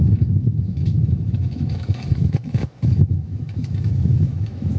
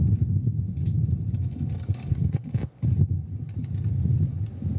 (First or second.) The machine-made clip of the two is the first